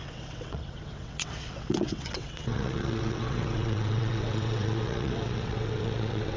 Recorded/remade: remade